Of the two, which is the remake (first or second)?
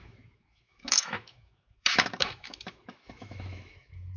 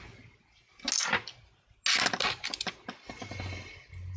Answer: first